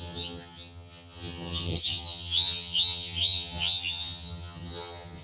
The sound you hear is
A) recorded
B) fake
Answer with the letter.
B